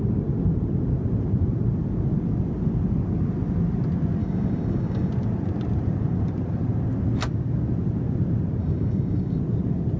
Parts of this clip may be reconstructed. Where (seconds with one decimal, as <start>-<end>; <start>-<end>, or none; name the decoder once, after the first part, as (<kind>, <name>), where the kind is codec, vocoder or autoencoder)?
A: 4.2-5.1 (codec, DAC); 8.6-9.4